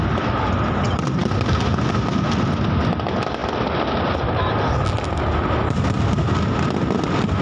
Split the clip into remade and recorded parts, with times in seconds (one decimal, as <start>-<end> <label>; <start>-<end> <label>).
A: 0.0-7.4 recorded